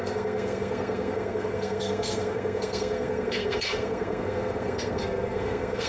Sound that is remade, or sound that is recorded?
remade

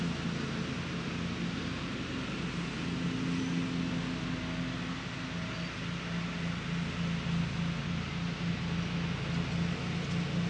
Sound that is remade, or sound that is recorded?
recorded